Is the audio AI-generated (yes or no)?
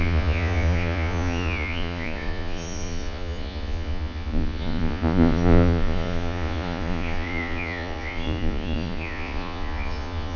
yes